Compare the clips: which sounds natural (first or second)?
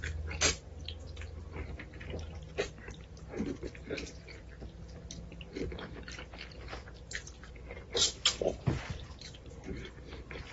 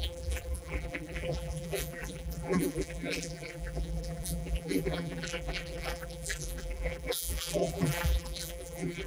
first